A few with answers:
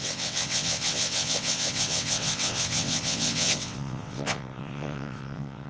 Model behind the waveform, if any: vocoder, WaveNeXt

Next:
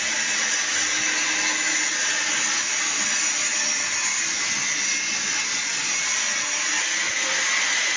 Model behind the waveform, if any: none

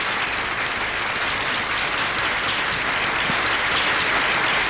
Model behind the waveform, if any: none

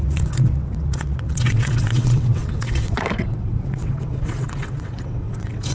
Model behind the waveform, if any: vocoder, WaveNeXt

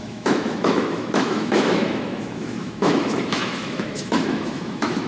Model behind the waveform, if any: autoencoder, DAC-VAE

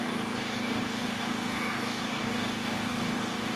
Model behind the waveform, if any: codec, DAC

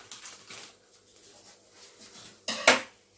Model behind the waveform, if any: none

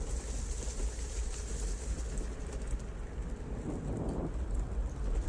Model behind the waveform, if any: none